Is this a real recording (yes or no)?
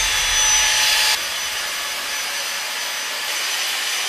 yes